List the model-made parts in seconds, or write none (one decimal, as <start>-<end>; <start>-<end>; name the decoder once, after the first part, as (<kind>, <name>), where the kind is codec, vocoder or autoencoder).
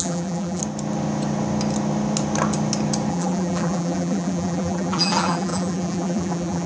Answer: 0.0-0.6 (vocoder, BigVGAN v2); 3.1-6.7